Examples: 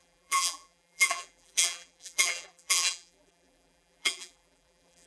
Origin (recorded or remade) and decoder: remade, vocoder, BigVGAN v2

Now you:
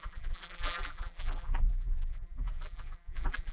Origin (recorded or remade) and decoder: remade, vocoder, BigVGAN v2